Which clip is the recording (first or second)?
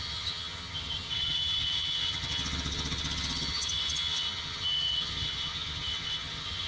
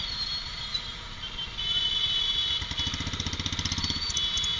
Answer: second